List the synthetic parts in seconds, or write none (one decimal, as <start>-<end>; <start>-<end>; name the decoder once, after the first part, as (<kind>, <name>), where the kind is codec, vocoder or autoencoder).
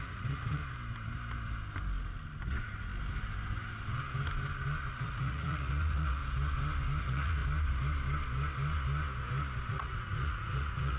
0.0-0.6 (vocoder, Vocos); 2.4-2.9; 5.0-6.2; 7.0-7.4; 9.7-11.0